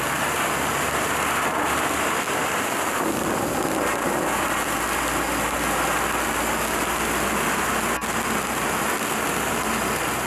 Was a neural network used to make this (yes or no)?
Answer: no